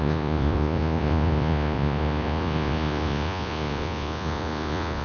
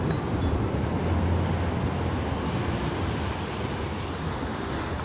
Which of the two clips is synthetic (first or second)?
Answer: first